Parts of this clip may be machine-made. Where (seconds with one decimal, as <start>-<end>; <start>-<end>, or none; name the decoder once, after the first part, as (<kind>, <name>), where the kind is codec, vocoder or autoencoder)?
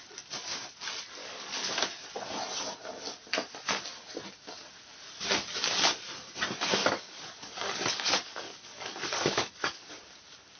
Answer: 1.2-1.7 (codec, DAC); 6.8-9.9